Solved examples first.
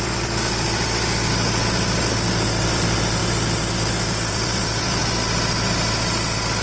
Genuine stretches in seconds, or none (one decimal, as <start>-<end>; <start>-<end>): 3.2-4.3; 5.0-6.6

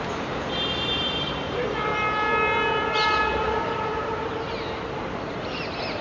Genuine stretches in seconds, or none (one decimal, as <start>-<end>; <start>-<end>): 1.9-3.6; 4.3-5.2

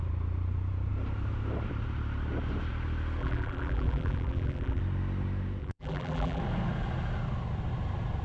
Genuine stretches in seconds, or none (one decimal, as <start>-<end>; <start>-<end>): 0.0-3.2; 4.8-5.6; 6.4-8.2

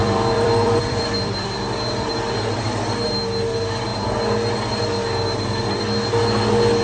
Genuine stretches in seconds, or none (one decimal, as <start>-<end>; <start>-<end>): 1.6-6.8